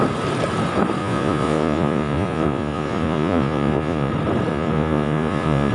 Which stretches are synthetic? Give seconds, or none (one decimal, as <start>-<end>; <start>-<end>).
1.0-4.1; 4.5-5.7